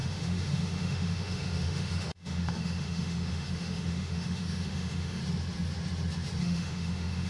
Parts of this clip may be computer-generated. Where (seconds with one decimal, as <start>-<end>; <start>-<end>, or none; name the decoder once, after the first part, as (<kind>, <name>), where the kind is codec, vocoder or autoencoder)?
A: 0.0-5.2 (autoencoder, DAC-VAE); 6.4-7.3

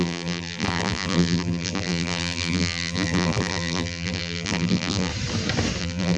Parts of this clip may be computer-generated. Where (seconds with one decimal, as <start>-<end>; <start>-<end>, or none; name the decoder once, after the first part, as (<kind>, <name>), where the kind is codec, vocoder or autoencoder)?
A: 0.0-5.1 (vocoder, BigVGAN v2); 5.8-6.2

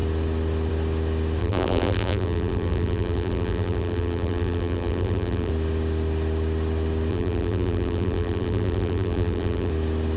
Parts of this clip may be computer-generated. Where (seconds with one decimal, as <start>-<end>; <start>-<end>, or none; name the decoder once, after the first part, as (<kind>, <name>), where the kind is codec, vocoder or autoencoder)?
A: 1.4-5.5 (vocoder, BigVGAN v2); 7.1-9.7

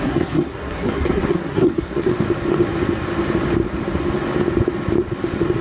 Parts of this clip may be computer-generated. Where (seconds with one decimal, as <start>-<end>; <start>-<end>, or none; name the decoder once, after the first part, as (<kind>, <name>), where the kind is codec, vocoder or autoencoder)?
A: 0.0-2.1 (codec, SNAC)

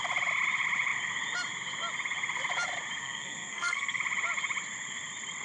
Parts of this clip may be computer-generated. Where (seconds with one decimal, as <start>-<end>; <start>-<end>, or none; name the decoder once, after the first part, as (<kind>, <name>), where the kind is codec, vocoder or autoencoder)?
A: 3.0-4.0 (codec, SNAC)

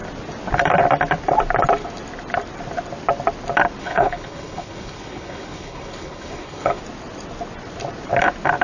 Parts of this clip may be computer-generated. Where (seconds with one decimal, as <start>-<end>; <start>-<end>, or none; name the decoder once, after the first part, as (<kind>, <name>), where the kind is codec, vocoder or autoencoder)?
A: 3.8-6.8 (codec, HILCodec)